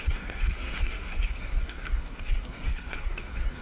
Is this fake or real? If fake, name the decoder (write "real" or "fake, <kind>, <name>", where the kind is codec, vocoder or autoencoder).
fake, codec, SNAC